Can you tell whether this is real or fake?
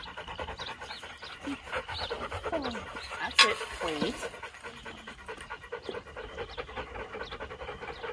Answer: real